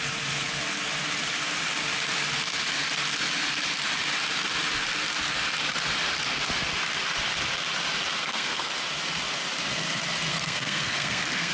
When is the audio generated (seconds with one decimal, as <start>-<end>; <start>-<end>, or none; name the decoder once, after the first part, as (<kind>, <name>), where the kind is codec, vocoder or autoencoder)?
8.2-8.7 (codec, SNAC); 10.3-11.5